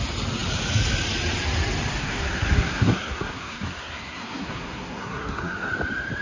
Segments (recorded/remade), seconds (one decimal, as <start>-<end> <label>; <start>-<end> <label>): 0.0-2.0 recorded; 2.0-5.7 remade; 5.7-6.2 recorded